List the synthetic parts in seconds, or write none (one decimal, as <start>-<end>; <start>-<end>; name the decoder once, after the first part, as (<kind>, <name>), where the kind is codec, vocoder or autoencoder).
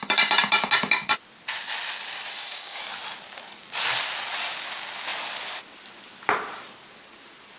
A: 2.3-2.8 (codec, DAC)